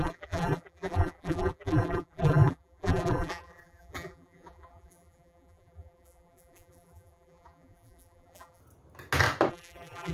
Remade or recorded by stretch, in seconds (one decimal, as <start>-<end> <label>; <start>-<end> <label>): 0.0-8.6 remade; 8.6-9.5 recorded; 9.5-10.1 remade